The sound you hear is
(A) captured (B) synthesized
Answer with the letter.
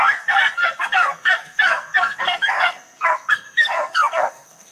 B